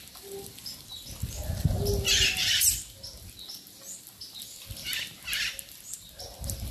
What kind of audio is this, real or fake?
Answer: real